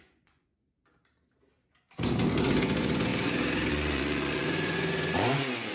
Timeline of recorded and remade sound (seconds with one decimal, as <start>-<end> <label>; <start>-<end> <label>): 0.0-0.5 remade; 0.5-2.6 recorded; 2.6-3.1 remade; 3.1-3.7 recorded; 3.7-5.7 remade